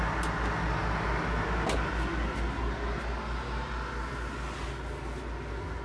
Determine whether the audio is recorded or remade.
recorded